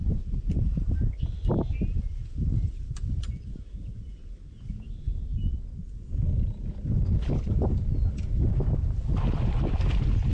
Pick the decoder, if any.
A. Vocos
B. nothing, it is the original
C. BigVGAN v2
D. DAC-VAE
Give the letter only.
B